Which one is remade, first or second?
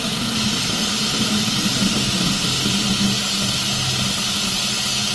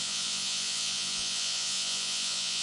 second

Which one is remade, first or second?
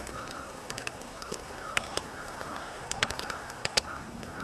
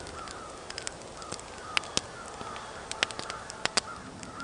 first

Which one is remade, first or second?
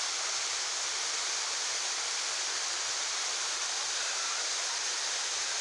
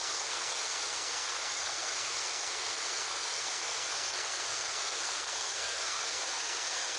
second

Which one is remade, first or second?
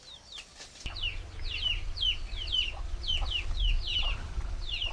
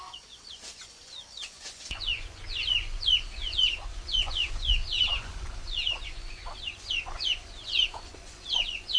second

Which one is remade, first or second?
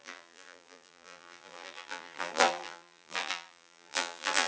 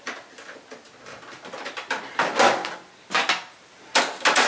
first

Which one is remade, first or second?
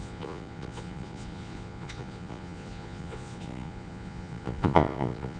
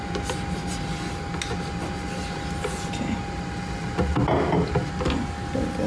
first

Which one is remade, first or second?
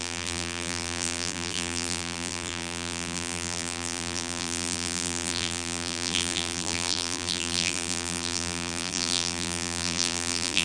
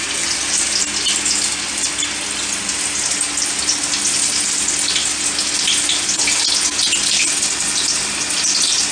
first